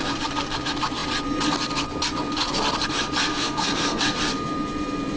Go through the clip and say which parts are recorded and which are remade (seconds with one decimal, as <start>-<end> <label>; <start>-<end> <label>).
0.0-3.3 recorded; 3.3-4.0 remade; 4.0-5.2 recorded